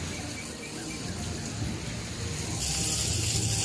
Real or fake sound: real